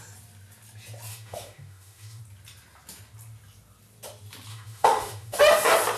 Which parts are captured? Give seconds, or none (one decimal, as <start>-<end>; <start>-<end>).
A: 0.0-1.1; 2.2-4.5; 5.4-6.0